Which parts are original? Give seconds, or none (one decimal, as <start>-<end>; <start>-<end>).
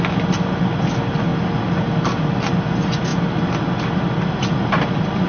0.0-5.3